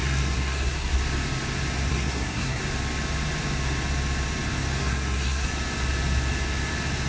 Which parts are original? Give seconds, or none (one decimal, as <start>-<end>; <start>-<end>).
1.0-1.9; 2.6-4.8; 5.5-7.1